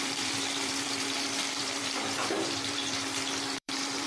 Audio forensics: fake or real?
fake